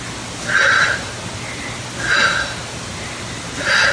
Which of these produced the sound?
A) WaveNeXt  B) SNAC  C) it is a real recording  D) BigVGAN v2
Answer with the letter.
C